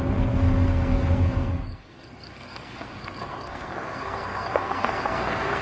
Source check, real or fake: fake